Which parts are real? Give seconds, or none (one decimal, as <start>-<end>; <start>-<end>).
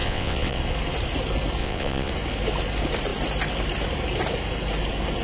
0.6-1.6; 2.1-5.2